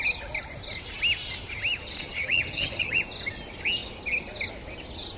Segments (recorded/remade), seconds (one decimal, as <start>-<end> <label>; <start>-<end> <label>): 0.0-2.0 recorded; 2.0-3.0 remade; 3.0-5.2 recorded